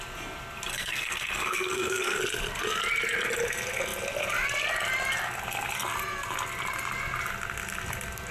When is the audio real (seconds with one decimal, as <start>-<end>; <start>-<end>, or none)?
0.0-0.7; 2.2-8.3

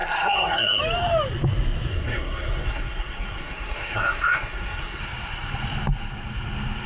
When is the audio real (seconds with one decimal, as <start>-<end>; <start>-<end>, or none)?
0.8-1.9; 5.0-6.9

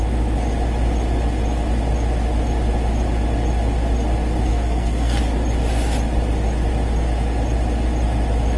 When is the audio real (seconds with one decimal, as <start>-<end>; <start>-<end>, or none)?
0.0-4.5; 5.2-8.6

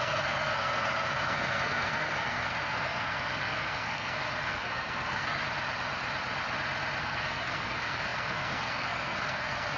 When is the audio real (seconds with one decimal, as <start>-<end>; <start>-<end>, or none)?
5.4-7.0

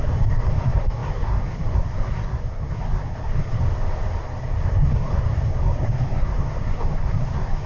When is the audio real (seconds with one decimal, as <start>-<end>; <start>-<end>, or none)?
3.6-4.4